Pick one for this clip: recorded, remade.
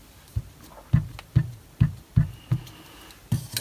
recorded